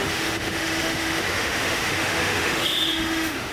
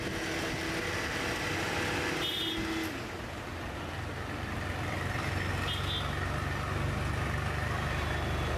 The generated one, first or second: first